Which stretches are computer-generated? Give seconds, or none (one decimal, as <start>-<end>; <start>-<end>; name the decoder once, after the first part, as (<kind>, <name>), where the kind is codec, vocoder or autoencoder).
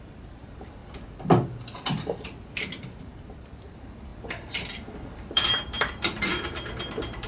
0.0-0.8 (vocoder, BigVGAN v2); 3.0-4.1; 5.1-6.3; 6.8-7.3